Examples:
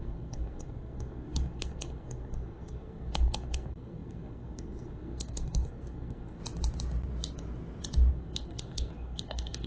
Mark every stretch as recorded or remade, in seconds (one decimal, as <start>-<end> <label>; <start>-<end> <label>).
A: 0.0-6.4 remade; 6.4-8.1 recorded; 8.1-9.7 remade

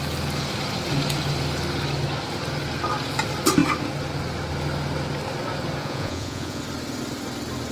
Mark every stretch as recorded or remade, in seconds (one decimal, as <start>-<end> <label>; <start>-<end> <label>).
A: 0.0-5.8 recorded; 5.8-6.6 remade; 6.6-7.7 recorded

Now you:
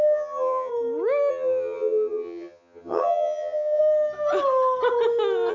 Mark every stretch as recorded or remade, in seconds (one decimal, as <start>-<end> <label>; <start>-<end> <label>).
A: 0.0-0.7 remade; 0.7-1.3 recorded; 1.3-3.8 remade; 3.8-5.5 recorded

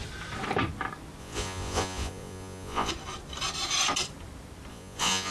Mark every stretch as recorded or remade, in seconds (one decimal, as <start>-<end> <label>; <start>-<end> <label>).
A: 0.0-1.2 recorded; 1.2-2.9 remade; 2.9-4.7 recorded; 4.7-5.3 remade

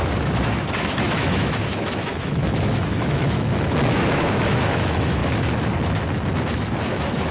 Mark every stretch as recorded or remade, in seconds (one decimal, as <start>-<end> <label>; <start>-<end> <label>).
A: 0.0-5.2 remade; 5.2-6.5 recorded; 6.5-7.3 remade

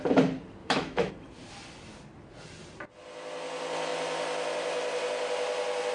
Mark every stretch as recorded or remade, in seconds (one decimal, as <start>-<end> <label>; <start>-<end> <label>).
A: 0.0-0.6 recorded; 0.6-1.1 remade; 1.1-5.9 recorded

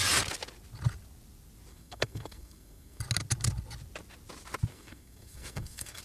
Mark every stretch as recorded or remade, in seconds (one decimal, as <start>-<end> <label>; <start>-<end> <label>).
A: 0.0-1.7 recorded; 1.7-3.0 remade; 3.0-4.7 recorded; 4.7-6.0 remade